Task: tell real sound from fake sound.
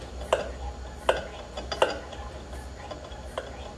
real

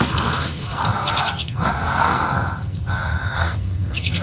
fake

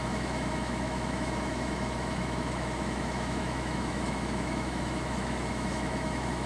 fake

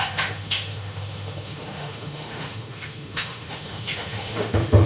fake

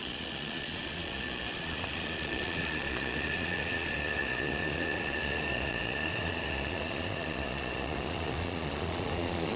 fake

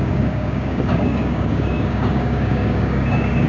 fake